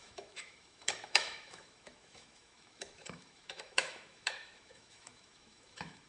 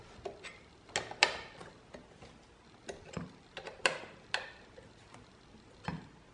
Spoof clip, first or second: first